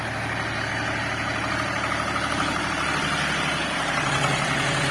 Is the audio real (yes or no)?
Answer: yes